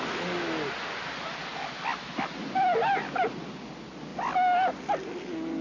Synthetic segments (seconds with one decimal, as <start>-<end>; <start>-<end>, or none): none

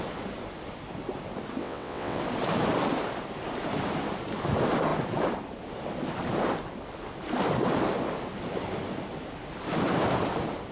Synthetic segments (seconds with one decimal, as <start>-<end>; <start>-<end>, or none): 1.6-2.2

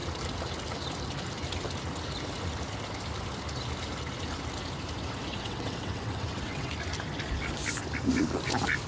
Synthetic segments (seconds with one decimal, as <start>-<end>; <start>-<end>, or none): 5.3-6.7

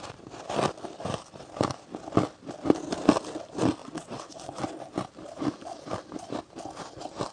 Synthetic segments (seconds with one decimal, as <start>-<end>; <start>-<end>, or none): 3.8-4.7

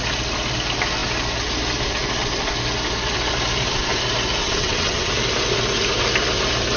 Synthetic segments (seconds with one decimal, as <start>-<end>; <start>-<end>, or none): 4.4-5.1

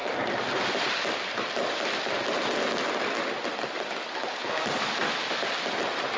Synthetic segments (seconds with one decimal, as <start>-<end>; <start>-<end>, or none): none

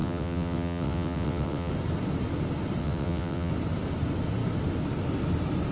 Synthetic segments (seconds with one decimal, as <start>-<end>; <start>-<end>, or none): 0.0-1.7; 2.8-3.5

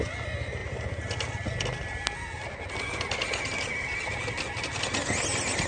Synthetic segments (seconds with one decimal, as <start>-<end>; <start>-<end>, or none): none